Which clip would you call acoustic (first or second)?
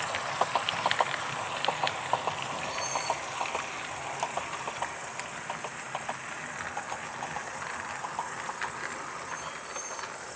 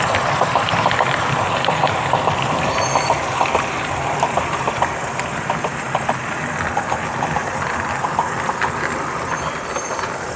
first